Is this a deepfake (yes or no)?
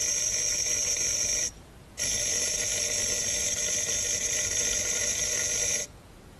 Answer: yes